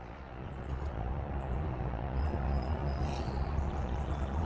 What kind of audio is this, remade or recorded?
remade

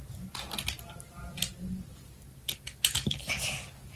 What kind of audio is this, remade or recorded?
recorded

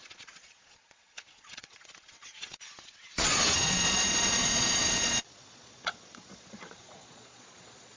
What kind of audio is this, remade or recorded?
remade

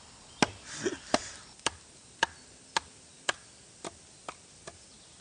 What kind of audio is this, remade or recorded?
recorded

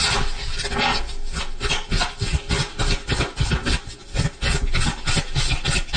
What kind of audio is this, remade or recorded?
recorded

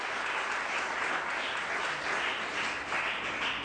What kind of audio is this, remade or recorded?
recorded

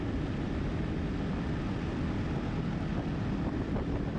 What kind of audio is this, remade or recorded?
recorded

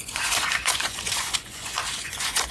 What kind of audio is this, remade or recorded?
remade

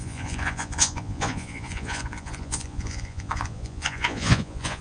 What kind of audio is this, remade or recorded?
remade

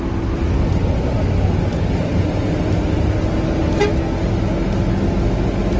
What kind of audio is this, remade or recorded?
recorded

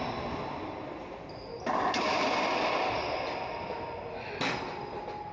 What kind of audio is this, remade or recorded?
recorded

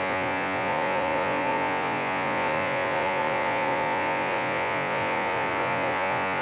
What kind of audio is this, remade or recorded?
remade